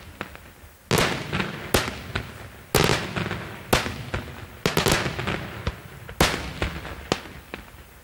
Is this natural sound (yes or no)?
yes